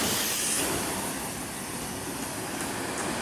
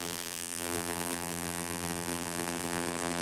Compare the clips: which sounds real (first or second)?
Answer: first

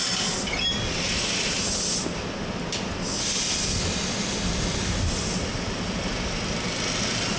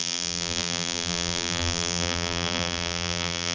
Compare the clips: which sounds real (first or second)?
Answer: first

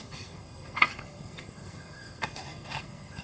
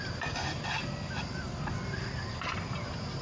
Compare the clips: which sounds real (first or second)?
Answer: second